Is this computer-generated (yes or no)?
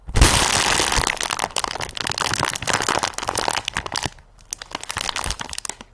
no